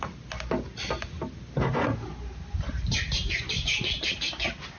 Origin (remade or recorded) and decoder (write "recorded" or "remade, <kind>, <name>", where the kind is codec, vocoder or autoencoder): recorded